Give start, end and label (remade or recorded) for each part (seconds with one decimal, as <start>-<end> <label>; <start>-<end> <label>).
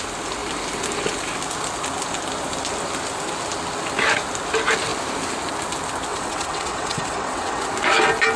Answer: 0.0-6.1 recorded; 6.1-7.7 remade; 7.7-8.4 recorded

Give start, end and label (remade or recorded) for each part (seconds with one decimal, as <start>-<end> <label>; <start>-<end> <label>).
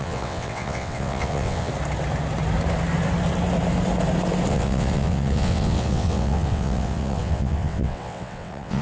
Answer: 0.0-1.7 remade; 1.7-4.5 recorded; 4.5-8.8 remade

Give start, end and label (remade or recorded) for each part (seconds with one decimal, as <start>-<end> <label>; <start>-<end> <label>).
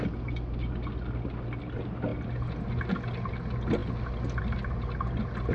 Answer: 0.0-5.5 recorded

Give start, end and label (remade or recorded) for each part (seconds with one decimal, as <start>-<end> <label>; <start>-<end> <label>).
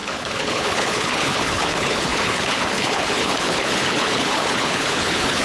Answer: 0.0-5.4 remade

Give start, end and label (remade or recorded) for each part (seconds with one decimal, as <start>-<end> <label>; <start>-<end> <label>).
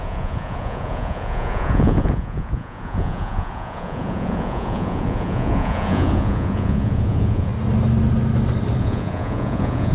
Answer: 0.0-7.5 remade; 7.5-8.8 recorded; 8.8-9.9 remade